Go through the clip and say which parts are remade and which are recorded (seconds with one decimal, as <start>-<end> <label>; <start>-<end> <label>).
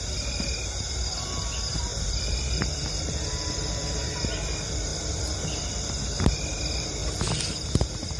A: 0.0-1.9 recorded; 1.9-3.2 remade; 3.2-7.0 recorded; 7.0-7.7 remade; 7.7-8.2 recorded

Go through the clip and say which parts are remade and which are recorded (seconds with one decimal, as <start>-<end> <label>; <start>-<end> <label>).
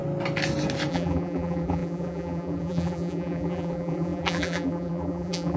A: 0.0-0.9 recorded; 0.9-5.6 remade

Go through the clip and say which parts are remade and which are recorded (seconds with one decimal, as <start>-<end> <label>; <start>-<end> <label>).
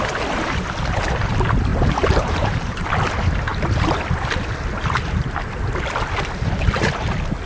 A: 0.0-1.7 recorded; 1.7-2.9 remade; 2.9-7.5 recorded